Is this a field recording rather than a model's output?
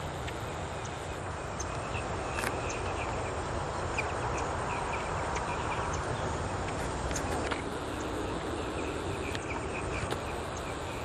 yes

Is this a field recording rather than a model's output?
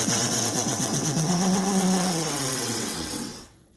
no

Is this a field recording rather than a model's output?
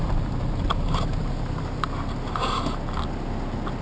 yes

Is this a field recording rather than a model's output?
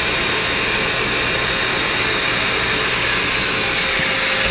yes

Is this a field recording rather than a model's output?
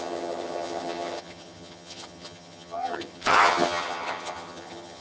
no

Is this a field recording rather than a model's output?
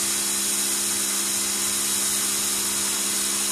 yes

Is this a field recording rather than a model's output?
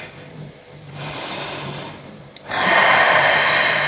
no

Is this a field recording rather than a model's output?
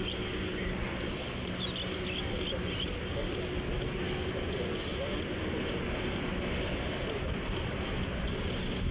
yes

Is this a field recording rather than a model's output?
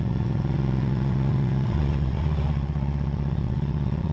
no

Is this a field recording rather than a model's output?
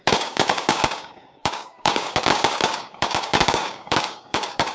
no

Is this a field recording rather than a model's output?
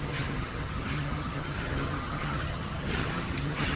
no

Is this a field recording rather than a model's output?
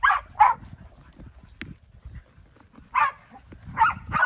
yes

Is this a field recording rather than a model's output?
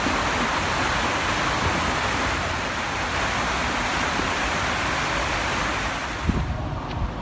yes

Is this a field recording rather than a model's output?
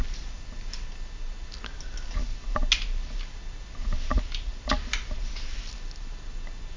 yes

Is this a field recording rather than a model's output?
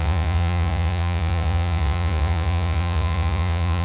no